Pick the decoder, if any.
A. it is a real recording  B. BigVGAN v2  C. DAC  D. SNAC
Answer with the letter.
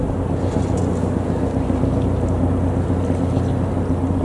A